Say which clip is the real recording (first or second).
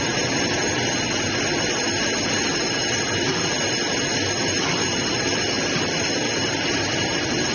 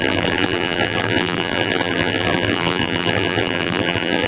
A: first